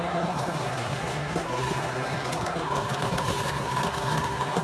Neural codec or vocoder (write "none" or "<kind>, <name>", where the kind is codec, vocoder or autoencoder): codec, SNAC